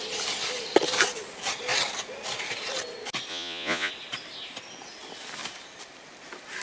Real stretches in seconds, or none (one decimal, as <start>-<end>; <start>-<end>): 0.0-3.3; 3.9-6.6